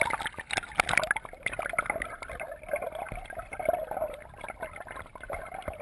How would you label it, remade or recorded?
recorded